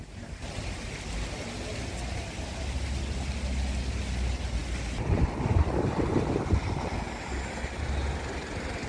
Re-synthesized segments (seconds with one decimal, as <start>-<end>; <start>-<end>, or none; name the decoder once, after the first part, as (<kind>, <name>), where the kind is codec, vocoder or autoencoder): none